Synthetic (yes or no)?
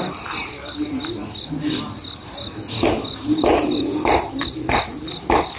no